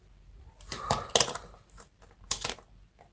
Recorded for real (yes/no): yes